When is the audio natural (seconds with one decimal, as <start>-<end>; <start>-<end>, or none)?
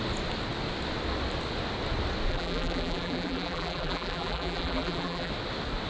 0.0-2.3; 5.3-5.9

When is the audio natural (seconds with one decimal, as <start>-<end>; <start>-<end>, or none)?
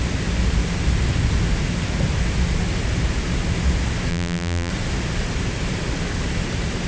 0.0-4.1; 4.7-6.9